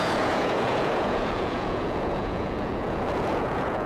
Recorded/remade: remade